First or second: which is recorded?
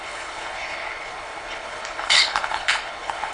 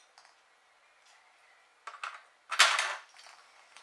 second